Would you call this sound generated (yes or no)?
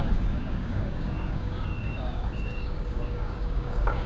yes